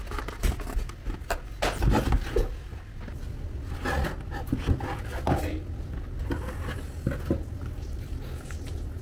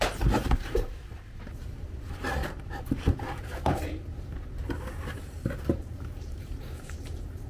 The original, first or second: first